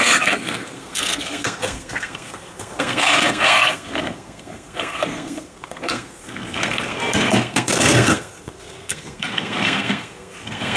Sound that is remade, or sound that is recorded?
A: remade